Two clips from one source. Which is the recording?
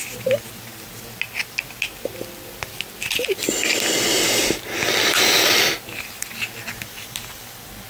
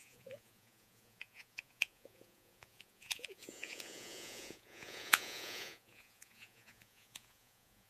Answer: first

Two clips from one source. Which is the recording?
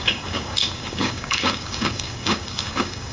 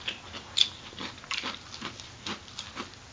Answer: second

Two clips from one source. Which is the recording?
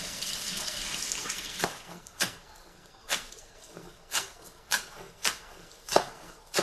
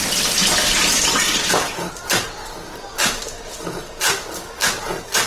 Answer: second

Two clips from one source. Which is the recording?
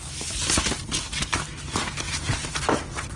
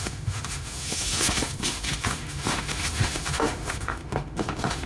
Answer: first